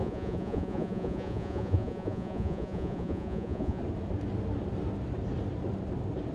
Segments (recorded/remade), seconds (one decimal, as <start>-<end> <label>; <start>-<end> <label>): 0.0-3.8 remade; 3.8-6.3 recorded